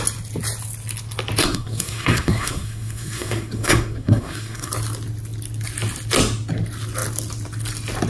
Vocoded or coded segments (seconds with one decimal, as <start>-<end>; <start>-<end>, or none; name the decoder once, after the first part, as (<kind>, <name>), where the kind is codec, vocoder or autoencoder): 1.4-4.7 (codec, SNAC)